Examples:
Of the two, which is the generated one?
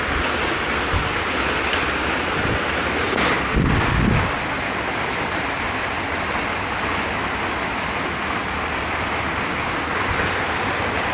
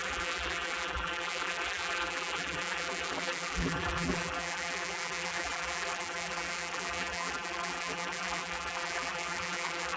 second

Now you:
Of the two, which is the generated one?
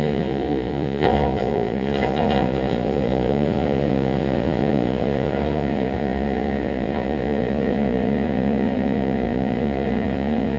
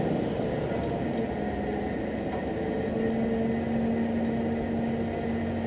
first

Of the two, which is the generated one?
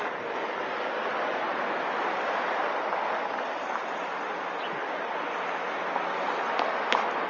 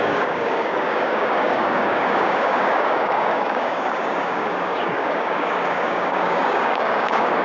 second